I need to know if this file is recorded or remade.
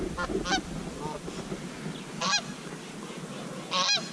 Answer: recorded